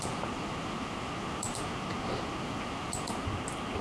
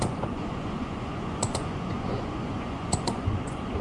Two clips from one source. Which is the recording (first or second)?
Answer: first